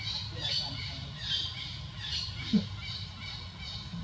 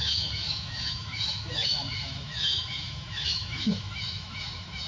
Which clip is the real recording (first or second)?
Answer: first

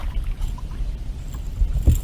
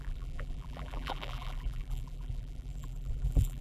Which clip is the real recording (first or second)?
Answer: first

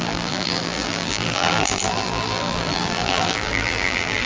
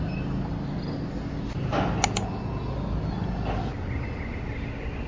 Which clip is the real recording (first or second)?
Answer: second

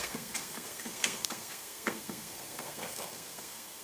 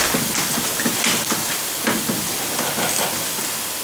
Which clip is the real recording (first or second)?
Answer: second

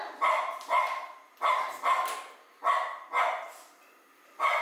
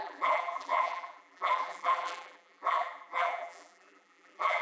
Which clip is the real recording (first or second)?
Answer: first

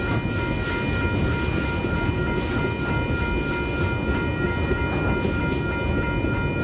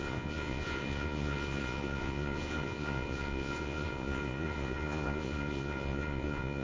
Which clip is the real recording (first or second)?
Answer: first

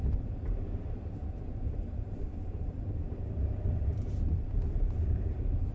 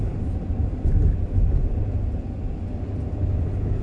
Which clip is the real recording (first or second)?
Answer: second